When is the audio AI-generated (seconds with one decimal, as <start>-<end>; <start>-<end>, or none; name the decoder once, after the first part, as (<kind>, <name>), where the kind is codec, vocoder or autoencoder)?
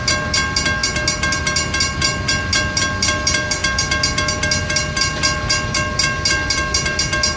none